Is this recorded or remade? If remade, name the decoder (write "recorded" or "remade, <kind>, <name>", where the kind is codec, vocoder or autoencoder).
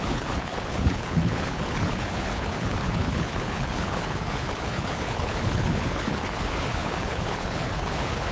remade, codec, HILCodec